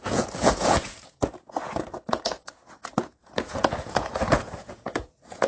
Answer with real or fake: fake